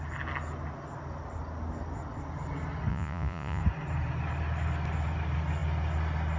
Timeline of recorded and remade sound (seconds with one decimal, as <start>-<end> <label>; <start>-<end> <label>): 0.0-2.9 recorded; 2.9-3.6 remade; 3.6-6.4 recorded